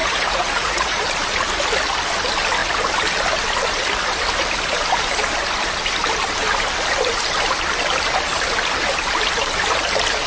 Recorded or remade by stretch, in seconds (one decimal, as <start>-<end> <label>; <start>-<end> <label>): 0.0-1.0 remade; 1.0-10.3 recorded